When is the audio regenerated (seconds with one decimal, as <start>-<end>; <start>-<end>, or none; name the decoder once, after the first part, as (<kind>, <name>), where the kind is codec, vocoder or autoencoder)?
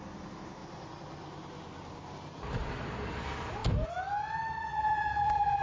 4.7-5.6 (vocoder, BigVGAN v2)